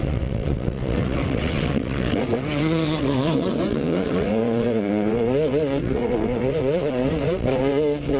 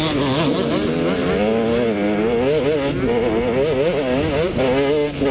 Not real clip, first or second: first